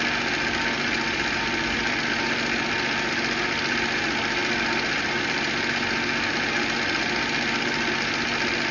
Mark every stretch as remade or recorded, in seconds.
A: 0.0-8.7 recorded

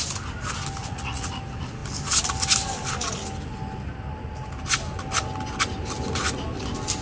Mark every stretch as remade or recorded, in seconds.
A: 0.0-0.8 recorded; 0.8-1.4 remade; 1.4-7.0 recorded

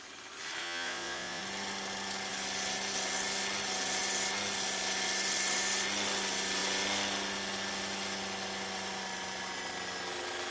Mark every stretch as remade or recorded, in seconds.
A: 0.0-0.6 recorded; 0.6-1.4 remade; 1.4-10.5 recorded

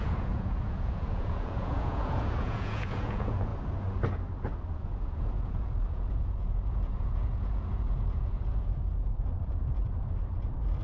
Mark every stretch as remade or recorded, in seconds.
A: 0.0-3.5 remade; 3.5-4.7 recorded; 4.7-9.8 remade; 9.8-10.8 recorded